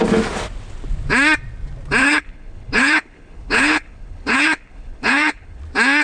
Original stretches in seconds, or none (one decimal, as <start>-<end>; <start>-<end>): 0.0-2.0; 5.6-6.0